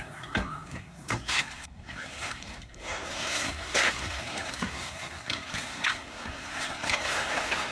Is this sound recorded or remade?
remade